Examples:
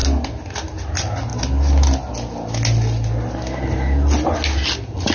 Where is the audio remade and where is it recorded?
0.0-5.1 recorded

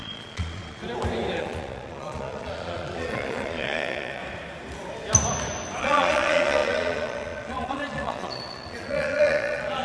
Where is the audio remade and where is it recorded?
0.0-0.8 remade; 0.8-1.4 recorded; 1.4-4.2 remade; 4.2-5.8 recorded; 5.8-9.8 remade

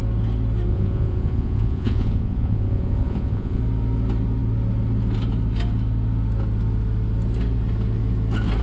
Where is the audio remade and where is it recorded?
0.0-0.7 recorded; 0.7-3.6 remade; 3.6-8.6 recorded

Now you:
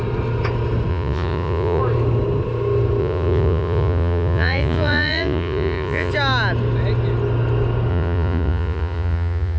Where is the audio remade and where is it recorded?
0.0-0.9 recorded; 0.9-1.8 remade; 1.8-3.0 recorded; 3.0-6.1 remade; 6.1-7.9 recorded; 7.9-9.6 remade

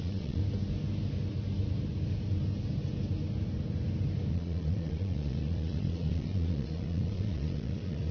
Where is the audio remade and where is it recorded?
0.0-0.4 remade; 0.4-4.3 recorded; 4.3-8.1 remade

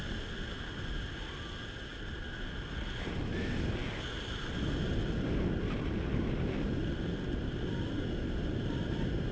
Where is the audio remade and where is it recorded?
0.0-9.3 recorded